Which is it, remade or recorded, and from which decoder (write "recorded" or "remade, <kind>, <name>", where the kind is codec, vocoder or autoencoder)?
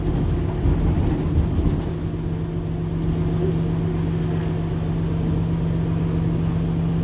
recorded